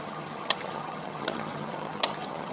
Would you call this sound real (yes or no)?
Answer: no